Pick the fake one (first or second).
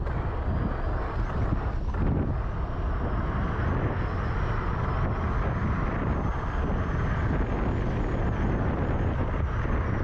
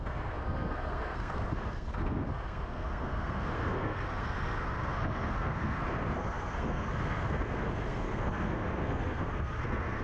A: second